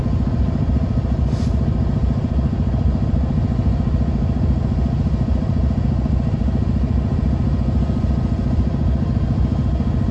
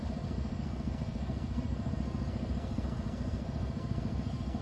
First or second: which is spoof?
second